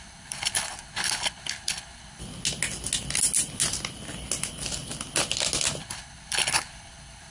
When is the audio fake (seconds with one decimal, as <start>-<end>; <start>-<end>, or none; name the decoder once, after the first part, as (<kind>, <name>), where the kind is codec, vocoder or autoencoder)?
0.0-2.2 (codec, HILCodec); 5.8-7.3